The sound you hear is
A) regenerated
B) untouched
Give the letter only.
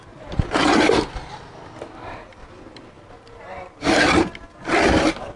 B